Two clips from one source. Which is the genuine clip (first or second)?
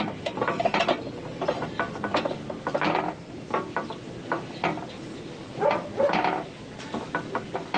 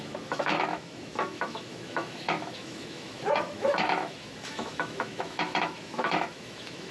first